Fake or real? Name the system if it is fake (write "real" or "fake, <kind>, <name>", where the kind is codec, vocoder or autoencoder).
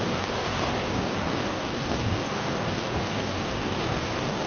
fake, codec, DAC